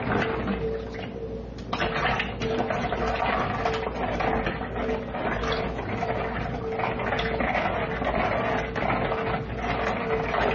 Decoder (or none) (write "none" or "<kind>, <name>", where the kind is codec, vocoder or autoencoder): none